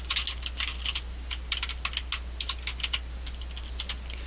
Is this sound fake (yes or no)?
no